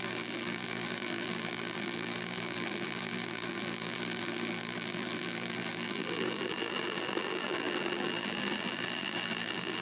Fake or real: fake